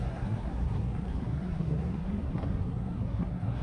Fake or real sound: fake